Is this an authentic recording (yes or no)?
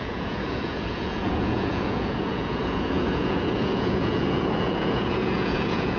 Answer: no